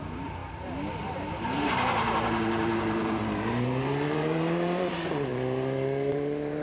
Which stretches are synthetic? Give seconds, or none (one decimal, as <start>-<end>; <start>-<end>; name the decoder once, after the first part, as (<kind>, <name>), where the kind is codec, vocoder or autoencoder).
0.0-0.4 (vocoder, BigVGAN v2); 1.3-6.6